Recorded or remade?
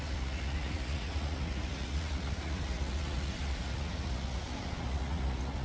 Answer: remade